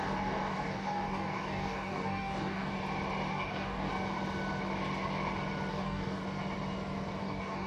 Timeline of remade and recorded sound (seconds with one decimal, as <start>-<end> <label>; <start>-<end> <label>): 0.0-2.7 remade; 2.7-3.3 recorded; 3.3-3.9 remade; 3.9-5.7 recorded; 5.7-6.2 remade; 6.2-7.2 recorded; 7.2-7.7 remade